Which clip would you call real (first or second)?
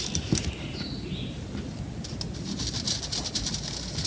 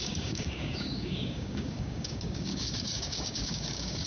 first